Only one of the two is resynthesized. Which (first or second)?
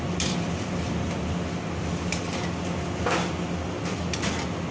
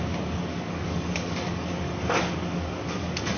second